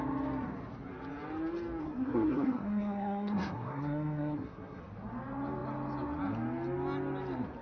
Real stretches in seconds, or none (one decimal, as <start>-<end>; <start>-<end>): 0.0-1.8; 4.8-7.6